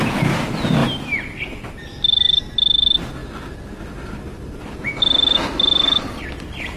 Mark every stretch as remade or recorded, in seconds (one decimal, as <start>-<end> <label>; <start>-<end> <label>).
0.0-6.8 recorded